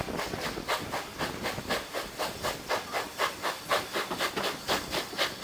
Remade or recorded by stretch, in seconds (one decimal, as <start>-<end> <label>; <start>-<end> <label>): 0.0-5.4 recorded